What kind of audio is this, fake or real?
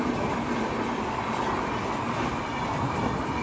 real